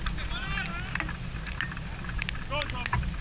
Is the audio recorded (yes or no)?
yes